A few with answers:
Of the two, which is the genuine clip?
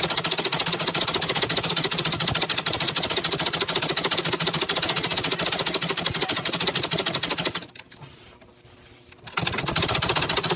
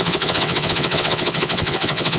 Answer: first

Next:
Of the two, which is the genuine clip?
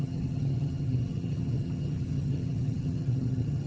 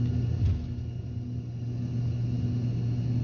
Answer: second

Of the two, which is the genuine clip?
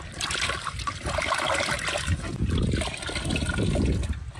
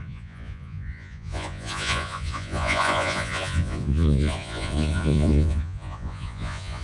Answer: first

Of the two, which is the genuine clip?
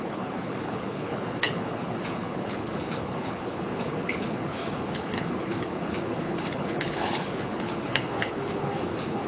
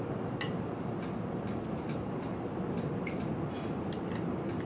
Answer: second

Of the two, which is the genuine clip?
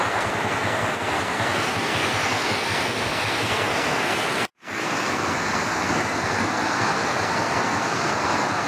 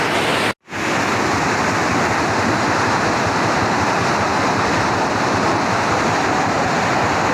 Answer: second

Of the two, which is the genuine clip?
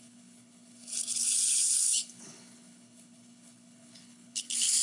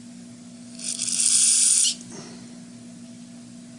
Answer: second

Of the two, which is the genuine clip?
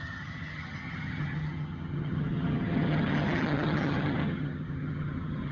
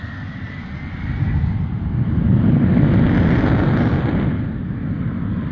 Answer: second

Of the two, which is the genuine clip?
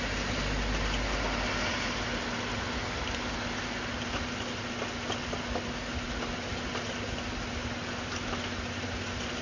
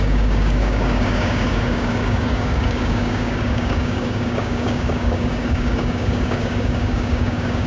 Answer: first